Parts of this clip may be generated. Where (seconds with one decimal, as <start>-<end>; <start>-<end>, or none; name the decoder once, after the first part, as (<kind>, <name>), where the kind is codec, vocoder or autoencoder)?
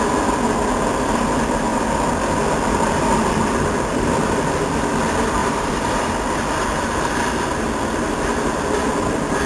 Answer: 5.4-6.1 (vocoder, BigVGAN v2)